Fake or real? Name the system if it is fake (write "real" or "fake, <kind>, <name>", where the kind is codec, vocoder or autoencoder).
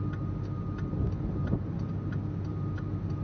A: real